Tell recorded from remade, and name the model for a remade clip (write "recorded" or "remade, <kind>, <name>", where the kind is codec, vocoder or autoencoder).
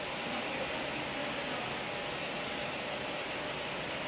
recorded